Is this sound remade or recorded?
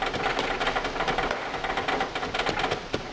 recorded